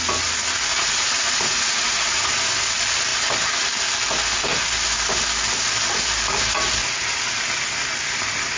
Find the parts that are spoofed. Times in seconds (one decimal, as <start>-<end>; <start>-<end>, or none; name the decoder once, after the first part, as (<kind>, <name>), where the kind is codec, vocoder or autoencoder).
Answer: 0.7-2.5 (vocoder, Vocos)